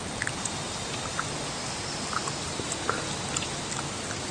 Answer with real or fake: real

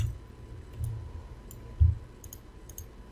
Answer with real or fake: real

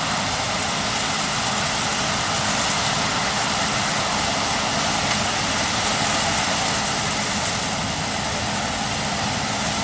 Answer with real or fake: real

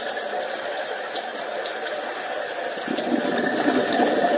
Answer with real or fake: real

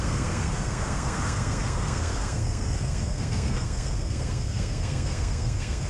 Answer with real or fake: fake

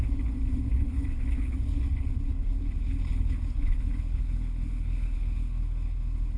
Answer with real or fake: fake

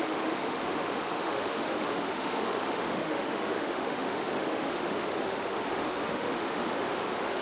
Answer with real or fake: fake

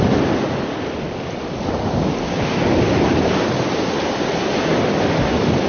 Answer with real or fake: real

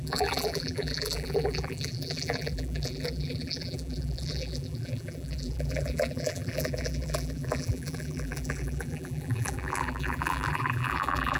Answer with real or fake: fake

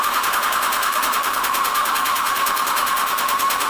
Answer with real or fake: fake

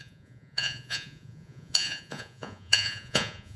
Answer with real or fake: fake